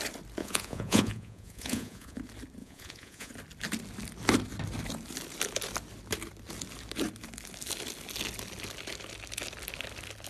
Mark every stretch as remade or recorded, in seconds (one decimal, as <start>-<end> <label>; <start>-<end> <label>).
0.0-0.4 recorded; 0.4-2.2 remade; 2.2-2.6 recorded; 2.6-3.3 remade; 3.3-10.3 recorded